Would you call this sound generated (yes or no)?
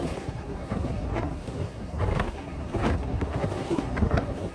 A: yes